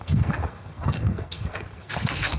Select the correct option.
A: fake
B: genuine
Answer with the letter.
A